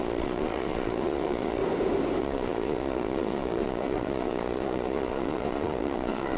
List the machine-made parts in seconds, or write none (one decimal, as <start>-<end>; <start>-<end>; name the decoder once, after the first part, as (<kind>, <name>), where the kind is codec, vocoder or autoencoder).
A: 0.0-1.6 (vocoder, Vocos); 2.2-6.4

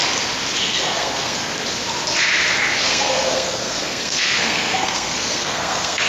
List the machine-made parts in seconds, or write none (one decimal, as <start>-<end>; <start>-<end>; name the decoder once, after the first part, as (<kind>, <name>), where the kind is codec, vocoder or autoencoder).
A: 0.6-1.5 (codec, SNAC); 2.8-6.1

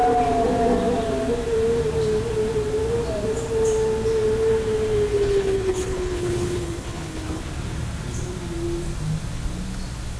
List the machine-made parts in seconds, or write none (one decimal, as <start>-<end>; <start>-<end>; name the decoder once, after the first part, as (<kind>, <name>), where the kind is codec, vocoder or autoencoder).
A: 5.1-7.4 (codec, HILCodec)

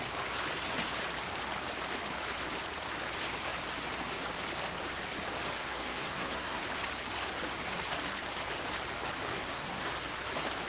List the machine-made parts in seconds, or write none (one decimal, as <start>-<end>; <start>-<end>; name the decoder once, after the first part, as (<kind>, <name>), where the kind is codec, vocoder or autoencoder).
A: 5.6-6.6 (codec, SNAC); 9.3-9.9